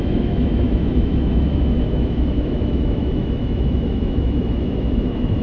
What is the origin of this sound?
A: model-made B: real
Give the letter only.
A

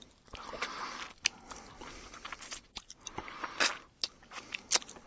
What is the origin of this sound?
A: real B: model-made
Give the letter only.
A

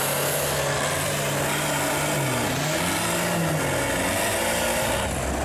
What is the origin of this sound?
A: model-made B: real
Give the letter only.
B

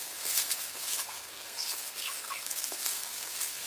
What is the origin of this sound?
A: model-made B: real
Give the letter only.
A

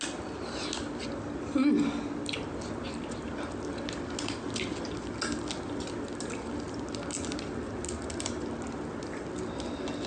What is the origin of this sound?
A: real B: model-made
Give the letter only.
A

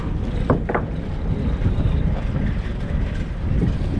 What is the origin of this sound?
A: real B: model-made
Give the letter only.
B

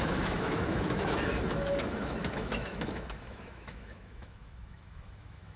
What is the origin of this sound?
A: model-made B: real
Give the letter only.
A